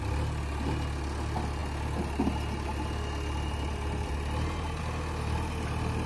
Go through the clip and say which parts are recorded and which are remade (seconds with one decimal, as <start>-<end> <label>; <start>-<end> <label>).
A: 0.0-6.1 recorded